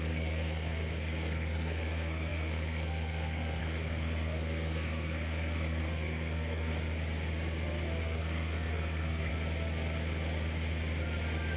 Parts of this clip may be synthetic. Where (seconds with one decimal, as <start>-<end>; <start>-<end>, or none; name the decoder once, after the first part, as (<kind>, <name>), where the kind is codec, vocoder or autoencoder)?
0.0-6.7 (codec, SNAC); 8.0-9.3